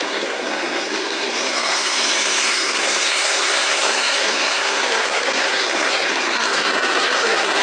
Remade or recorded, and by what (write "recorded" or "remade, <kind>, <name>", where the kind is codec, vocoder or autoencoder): remade, codec, SNAC